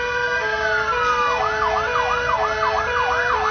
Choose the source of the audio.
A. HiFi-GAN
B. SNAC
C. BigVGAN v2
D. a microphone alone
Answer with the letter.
D